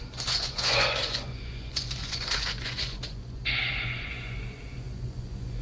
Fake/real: fake